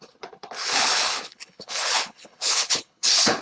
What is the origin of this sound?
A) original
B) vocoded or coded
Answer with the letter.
B